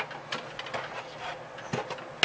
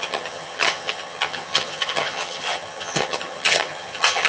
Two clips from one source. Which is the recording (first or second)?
first